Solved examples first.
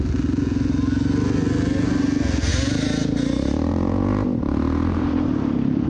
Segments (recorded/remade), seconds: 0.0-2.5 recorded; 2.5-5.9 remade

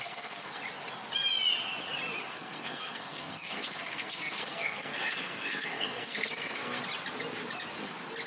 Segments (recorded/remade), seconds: 0.0-0.6 remade; 0.6-2.3 recorded; 2.3-6.8 remade; 6.8-8.3 recorded

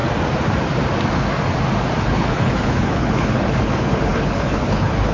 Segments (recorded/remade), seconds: 0.0-2.0 recorded; 2.0-5.1 remade

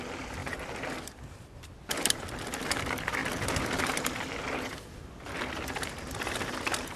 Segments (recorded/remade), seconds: 0.0-7.0 recorded

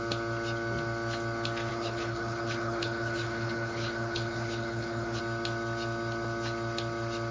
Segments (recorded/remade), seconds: 0.0-1.7 recorded; 1.7-5.2 remade; 5.2-7.3 recorded

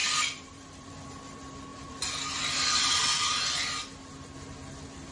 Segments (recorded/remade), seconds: 0.0-1.1 remade; 1.1-1.7 recorded; 1.7-2.8 remade; 2.8-5.1 recorded